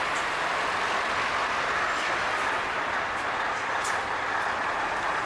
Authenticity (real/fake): real